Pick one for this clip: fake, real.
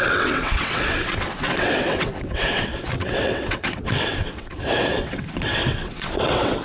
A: fake